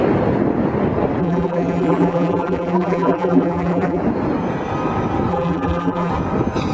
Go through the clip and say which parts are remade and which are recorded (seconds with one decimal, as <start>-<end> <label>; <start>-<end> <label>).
0.0-1.2 recorded; 1.2-4.0 remade; 4.0-5.3 recorded; 5.3-6.1 remade; 6.1-6.7 recorded